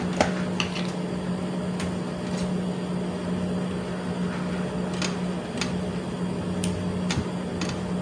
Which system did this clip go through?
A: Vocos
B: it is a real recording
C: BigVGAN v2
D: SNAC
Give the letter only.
B